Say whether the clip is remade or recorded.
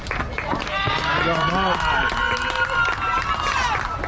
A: recorded